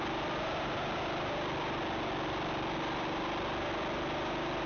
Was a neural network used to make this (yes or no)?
no